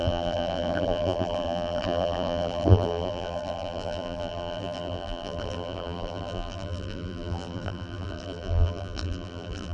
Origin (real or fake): fake